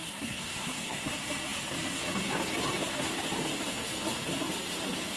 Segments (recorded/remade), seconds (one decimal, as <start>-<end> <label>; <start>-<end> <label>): 0.0-1.1 remade; 1.1-5.2 recorded